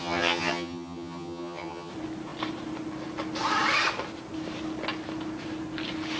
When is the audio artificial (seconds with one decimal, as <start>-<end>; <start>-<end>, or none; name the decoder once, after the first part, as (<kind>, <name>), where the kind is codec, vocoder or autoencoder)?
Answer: 0.0-1.9 (vocoder, HiFi-GAN)